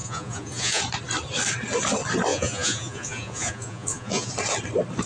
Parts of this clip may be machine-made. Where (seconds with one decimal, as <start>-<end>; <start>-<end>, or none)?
0.0-0.8; 2.3-4.3